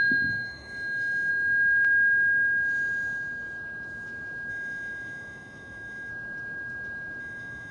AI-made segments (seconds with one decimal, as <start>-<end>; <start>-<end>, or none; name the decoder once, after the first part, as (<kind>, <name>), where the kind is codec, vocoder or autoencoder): 0.0-1.3 (autoencoder, DAC-VAE); 4.5-6.1; 7.2-7.7